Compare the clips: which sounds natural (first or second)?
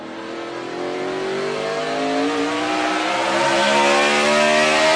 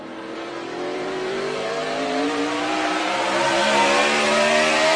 first